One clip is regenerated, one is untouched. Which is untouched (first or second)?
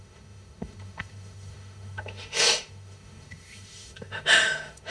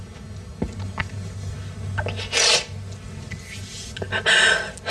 second